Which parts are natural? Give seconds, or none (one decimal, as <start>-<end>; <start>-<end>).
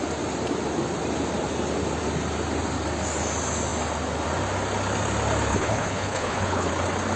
0.0-5.5; 6.7-7.2